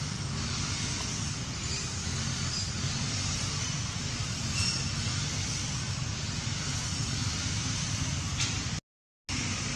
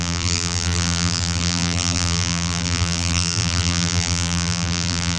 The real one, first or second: first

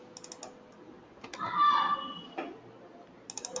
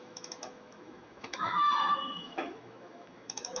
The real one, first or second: first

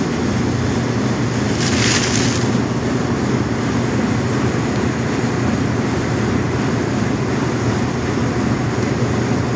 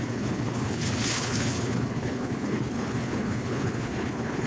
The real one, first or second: first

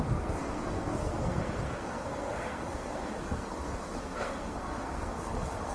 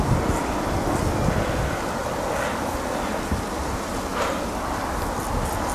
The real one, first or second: second